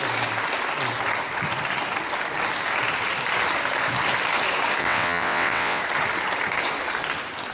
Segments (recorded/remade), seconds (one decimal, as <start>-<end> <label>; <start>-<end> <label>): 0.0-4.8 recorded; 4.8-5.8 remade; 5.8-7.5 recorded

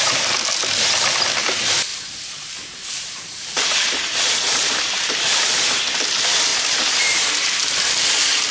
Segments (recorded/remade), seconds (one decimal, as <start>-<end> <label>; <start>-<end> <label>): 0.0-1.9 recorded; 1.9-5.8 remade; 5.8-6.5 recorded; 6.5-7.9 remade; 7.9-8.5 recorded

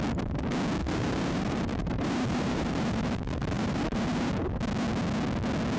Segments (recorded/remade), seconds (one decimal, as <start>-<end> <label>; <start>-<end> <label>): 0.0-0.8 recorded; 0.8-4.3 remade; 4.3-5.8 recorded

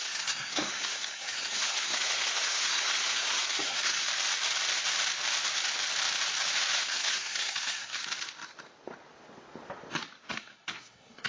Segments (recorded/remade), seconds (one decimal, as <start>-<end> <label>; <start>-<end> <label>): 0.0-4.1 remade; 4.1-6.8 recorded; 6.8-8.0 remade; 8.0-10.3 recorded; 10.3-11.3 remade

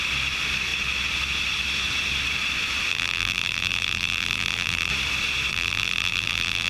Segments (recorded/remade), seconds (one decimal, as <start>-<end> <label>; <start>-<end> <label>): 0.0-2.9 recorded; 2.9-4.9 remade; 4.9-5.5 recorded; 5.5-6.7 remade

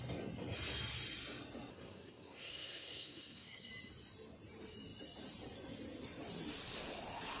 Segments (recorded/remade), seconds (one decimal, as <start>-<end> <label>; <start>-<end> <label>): 0.0-1.7 recorded; 1.7-3.7 remade; 3.7-7.4 recorded

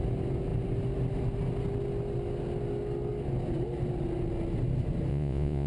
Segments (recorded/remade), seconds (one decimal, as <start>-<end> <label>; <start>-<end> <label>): 0.0-5.1 recorded; 5.1-5.7 remade